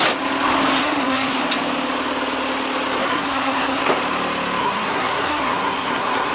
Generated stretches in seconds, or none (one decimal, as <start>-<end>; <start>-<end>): 0.8-1.4; 3.0-3.8; 4.6-6.3